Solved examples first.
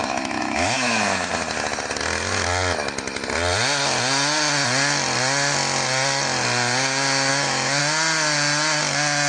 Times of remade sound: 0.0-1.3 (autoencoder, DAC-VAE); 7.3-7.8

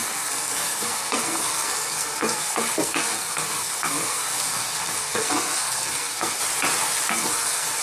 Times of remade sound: 0.0-6.4 (codec, SNAC); 7.1-7.8

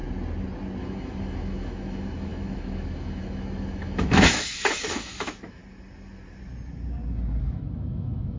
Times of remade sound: 0.8-5.6 (autoencoder, DAC-VAE); 7.4-8.4

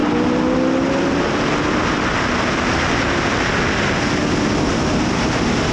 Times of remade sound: none

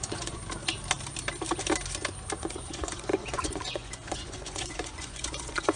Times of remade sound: 0.0-0.4 (vocoder, Vocos); 2.4-5.8

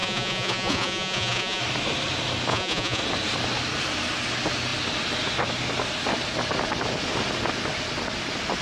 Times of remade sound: 0.0-1.6 (vocoder, Vocos); 2.5-3.0

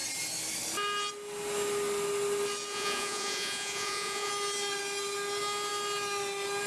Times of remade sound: 2.7-4.3 (vocoder, Vocos)

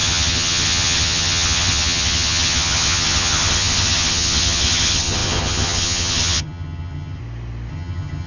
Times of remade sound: 0.0-7.2 (vocoder, HiFi-GAN); 7.7-8.3